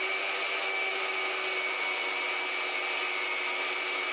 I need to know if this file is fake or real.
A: real